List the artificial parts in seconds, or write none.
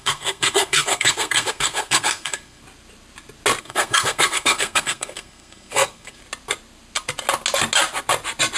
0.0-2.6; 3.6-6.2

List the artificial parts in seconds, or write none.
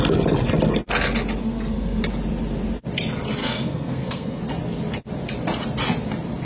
1.4-2.0; 3.4-4.4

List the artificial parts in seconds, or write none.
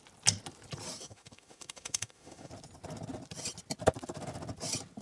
1.0-2.5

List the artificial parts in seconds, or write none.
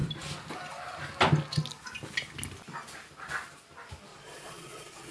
4.1-5.1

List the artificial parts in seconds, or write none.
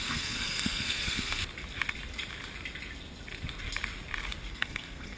0.0-1.4; 4.5-5.2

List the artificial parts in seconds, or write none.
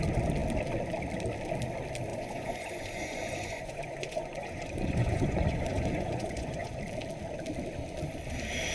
2.1-6.8